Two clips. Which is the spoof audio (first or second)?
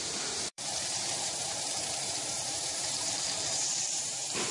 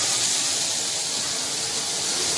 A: first